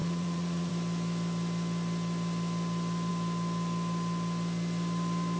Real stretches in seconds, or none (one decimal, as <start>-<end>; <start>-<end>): 0.7-5.4